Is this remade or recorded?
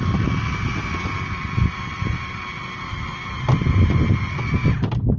recorded